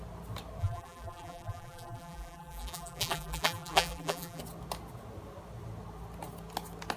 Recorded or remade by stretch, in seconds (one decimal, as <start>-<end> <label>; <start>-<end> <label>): 0.0-0.6 recorded; 0.6-4.4 remade; 4.4-7.0 recorded